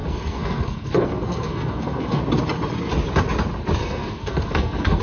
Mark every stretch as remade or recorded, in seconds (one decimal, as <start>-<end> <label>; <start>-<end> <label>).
0.0-2.2 remade; 2.2-3.8 recorded; 3.8-5.0 remade